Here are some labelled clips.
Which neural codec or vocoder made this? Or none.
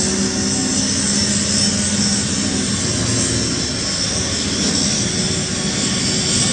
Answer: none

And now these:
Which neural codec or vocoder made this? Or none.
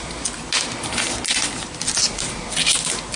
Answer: none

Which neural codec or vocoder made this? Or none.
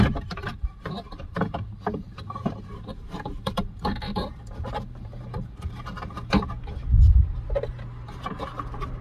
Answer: vocoder, BigVGAN v2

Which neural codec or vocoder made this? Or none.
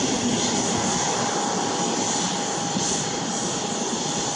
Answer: vocoder, BigVGAN v2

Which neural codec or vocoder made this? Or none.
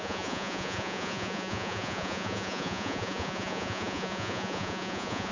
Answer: vocoder, Vocos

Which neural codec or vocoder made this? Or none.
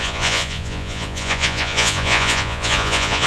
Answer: vocoder, Vocos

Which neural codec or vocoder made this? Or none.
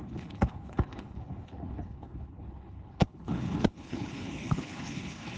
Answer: codec, HILCodec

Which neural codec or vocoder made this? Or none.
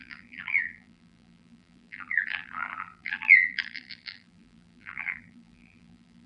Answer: vocoder, BigVGAN v2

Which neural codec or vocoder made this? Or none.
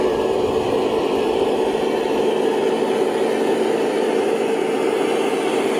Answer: none